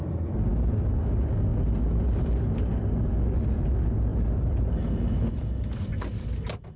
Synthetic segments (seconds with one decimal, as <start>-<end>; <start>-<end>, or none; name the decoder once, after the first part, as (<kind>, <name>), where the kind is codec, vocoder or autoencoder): none